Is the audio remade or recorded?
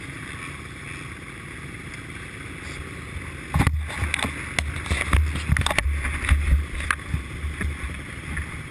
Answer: recorded